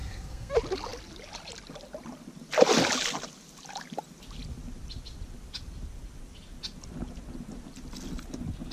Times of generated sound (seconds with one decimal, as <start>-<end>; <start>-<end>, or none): 0.0-0.5